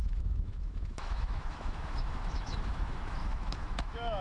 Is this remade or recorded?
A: remade